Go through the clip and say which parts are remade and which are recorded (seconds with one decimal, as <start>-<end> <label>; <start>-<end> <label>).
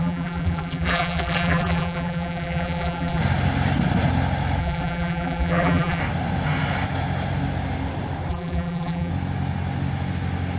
0.0-3.2 remade; 3.2-4.6 recorded; 4.6-6.0 remade; 6.0-8.3 recorded; 8.3-9.1 remade; 9.1-10.6 recorded